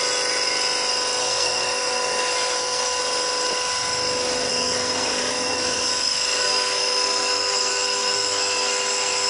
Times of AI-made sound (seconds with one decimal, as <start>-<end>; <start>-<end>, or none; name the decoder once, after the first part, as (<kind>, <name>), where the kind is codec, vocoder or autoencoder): 1.2-3.0 (codec, SNAC); 4.5-5.9; 6.4-9.3